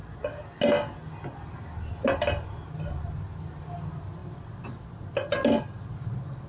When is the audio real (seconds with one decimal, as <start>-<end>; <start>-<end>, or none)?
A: 0.0-4.2; 4.9-6.5